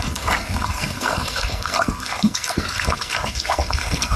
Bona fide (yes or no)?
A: no